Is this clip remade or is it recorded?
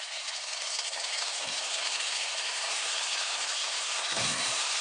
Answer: remade